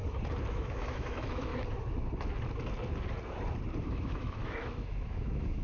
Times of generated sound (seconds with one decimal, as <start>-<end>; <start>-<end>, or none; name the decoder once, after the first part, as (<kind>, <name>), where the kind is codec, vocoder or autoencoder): 0.5-1.5 (autoencoder, DAC-VAE); 3.8-5.6